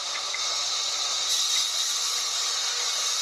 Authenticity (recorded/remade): recorded